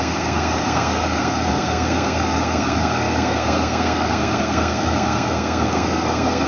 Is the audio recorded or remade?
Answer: remade